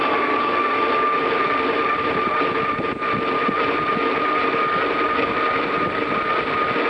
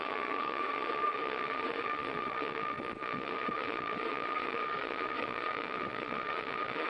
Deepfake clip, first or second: second